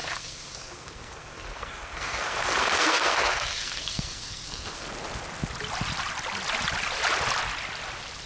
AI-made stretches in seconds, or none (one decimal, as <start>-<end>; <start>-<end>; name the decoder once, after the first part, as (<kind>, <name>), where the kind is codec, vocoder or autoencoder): 0.0-4.9 (codec, SNAC)